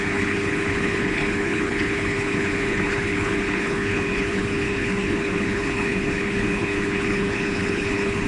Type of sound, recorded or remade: remade